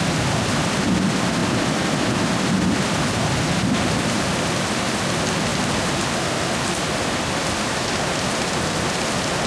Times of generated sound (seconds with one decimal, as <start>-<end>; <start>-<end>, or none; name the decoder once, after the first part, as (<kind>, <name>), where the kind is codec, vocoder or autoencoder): none